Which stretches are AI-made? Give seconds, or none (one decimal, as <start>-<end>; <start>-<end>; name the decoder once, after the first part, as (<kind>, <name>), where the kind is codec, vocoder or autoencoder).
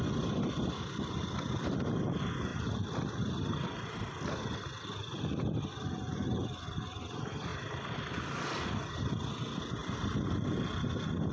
2.5-3.1 (vocoder, BigVGAN v2); 7.5-8.0; 9.8-10.5